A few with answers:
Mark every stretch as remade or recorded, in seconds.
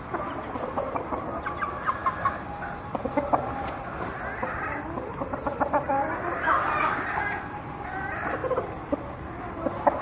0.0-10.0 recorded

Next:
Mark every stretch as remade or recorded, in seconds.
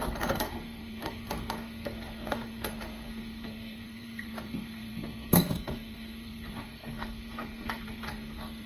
0.0-8.7 remade